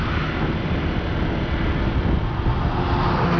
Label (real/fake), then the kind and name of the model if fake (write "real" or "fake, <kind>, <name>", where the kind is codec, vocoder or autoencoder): real